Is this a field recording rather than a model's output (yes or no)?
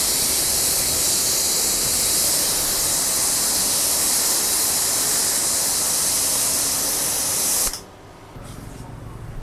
yes